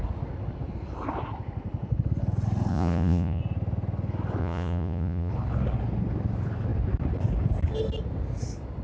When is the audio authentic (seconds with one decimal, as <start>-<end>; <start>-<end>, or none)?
0.0-2.7; 3.4-4.4; 5.3-8.8